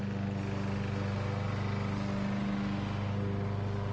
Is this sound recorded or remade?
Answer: recorded